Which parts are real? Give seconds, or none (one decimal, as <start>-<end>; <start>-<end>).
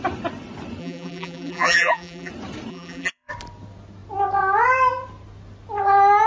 0.0-0.8; 2.3-2.7; 3.3-6.3